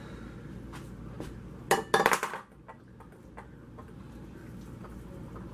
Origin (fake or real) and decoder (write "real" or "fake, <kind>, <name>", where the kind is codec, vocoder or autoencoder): real